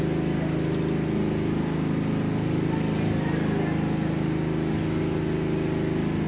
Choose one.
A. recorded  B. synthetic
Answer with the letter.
A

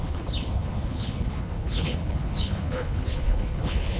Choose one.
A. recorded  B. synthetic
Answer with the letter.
B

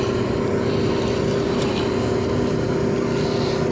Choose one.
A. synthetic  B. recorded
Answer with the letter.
B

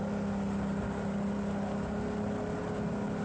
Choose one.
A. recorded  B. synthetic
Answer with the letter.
A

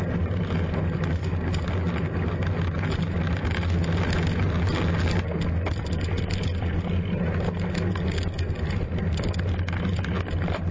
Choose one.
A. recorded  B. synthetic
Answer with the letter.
A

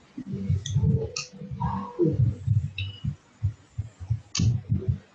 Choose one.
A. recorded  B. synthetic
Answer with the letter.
A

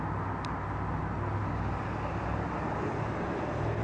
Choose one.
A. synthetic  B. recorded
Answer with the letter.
B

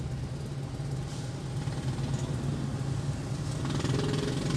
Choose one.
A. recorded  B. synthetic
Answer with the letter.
A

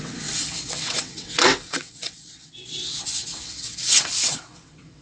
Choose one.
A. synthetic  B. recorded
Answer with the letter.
A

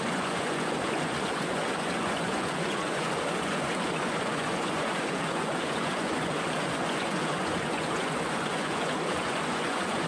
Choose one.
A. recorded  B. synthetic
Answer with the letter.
B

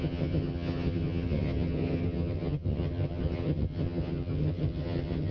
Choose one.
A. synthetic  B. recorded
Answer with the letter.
A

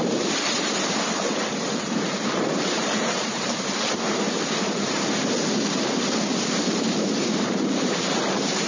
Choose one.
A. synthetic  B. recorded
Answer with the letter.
A